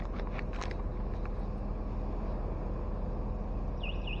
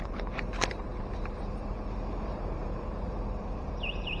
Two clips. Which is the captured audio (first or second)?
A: first